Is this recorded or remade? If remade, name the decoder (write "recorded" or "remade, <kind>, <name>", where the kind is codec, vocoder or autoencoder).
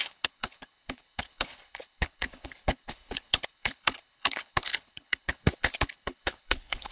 remade, codec, HILCodec